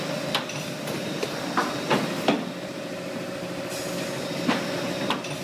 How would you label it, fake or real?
real